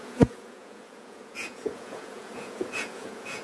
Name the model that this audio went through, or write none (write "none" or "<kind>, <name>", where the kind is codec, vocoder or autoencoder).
vocoder, Vocos